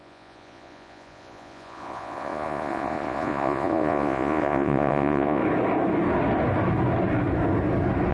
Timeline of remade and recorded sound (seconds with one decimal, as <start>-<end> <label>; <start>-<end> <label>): 0.0-5.4 remade; 5.4-8.1 recorded